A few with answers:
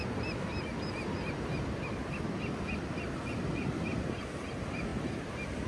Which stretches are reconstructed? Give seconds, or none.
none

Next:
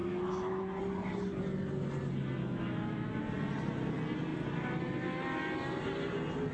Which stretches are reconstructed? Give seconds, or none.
0.0-0.8 (autoencoder, DAC-VAE); 2.4-3.2

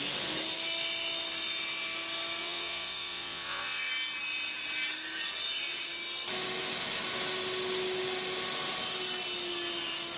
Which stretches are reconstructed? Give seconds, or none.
2.4-3.9 (vocoder, Vocos)

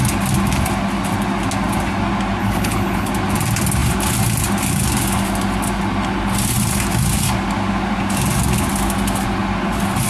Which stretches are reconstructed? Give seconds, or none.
2.4-3.1 (codec, HILCodec)

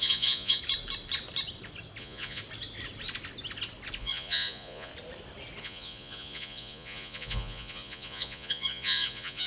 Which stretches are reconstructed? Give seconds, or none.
0.0-0.6 (vocoder, Vocos); 2.0-2.4; 4.0-4.9; 5.6-9.5